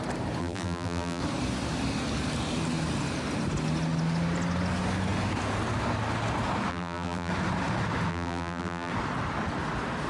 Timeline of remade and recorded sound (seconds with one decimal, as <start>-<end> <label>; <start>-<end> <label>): 0.0-0.4 recorded; 0.4-1.2 remade; 1.2-6.7 recorded; 6.7-7.3 remade; 7.3-8.1 recorded; 8.1-8.9 remade; 8.9-10.1 recorded